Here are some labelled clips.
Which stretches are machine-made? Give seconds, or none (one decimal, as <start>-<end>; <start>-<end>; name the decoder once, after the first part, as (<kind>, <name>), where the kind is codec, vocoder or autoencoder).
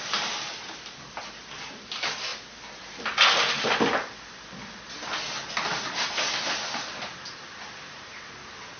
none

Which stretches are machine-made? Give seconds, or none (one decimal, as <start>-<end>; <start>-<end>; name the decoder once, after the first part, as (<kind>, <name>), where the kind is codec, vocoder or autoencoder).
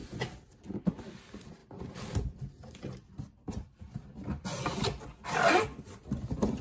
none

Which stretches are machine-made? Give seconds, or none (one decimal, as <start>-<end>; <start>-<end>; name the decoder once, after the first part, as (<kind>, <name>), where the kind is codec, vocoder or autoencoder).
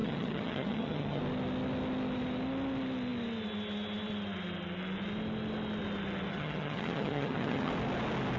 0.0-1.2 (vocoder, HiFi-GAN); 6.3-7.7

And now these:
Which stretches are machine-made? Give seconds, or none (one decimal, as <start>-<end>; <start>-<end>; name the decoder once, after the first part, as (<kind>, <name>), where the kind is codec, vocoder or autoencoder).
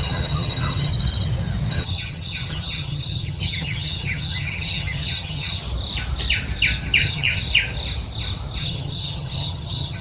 0.0-0.9 (vocoder, HiFi-GAN); 1.7-5.6; 7.0-7.4; 8.6-10.0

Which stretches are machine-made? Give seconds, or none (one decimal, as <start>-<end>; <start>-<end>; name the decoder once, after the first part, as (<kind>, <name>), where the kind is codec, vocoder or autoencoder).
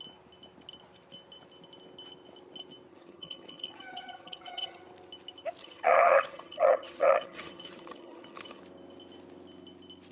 2.9-4.8 (vocoder, HiFi-GAN); 5.6-8.6